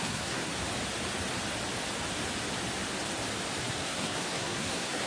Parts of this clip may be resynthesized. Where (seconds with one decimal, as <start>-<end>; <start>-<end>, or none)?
0.0-0.5; 3.6-5.1